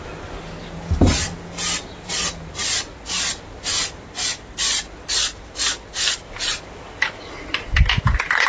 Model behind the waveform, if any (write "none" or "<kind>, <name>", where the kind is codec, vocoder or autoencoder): none